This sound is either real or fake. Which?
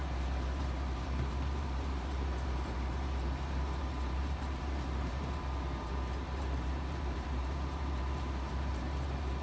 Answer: fake